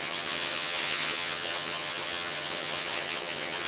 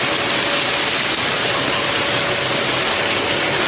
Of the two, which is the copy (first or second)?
first